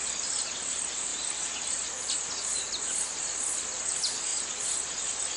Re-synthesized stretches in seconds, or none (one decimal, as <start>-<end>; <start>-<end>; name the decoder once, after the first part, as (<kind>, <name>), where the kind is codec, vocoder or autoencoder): none